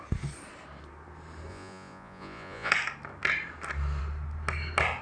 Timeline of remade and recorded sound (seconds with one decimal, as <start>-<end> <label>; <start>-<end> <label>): 0.0-1.5 recorded; 1.5-2.7 remade; 2.7-5.0 recorded